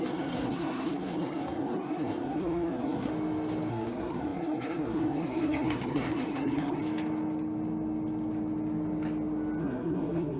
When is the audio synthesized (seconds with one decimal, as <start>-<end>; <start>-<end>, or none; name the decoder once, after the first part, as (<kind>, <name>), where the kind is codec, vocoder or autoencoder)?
0.0-3.1 (codec, SNAC); 3.7-6.8; 9.6-10.4